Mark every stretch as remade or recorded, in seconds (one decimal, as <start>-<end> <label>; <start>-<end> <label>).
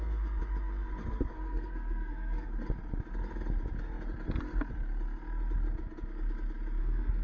0.0-0.4 remade; 0.4-1.1 recorded; 1.1-2.5 remade; 2.5-6.8 recorded; 6.8-7.2 remade